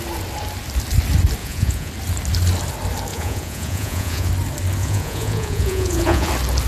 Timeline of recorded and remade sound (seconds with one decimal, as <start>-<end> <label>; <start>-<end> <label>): 0.0-1.4 recorded; 1.4-1.9 remade; 1.9-3.1 recorded; 3.1-4.3 remade; 4.3-4.8 recorded; 4.8-6.3 remade; 6.3-6.7 recorded